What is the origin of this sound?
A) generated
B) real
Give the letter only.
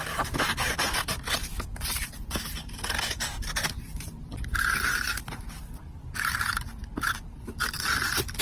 B